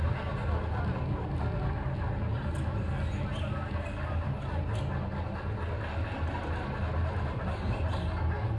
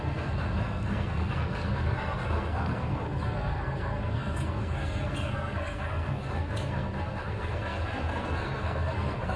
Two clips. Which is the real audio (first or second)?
first